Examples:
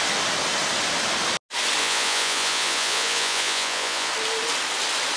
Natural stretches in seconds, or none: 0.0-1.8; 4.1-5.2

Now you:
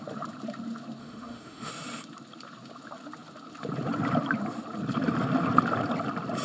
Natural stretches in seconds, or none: 0.0-1.0; 1.7-6.4

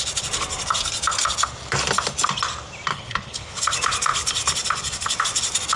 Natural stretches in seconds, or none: 0.0-2.9; 3.6-5.8

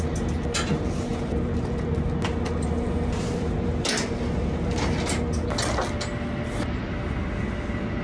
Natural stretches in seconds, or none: 0.0-8.0

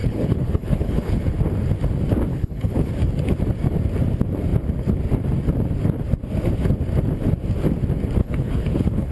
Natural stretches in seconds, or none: 1.3-2.3; 2.9-8.2

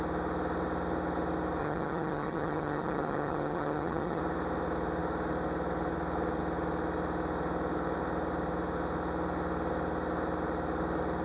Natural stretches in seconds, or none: 0.0-1.6; 4.2-11.2

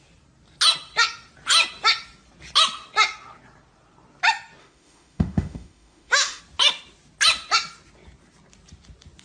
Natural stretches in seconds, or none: 0.0-4.6; 6.4-9.2